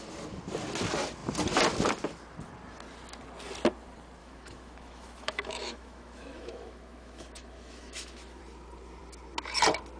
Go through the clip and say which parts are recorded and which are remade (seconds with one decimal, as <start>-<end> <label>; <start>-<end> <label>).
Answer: 0.0-4.2 recorded; 4.2-8.4 remade; 8.4-10.0 recorded